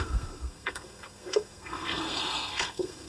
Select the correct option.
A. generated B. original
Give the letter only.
A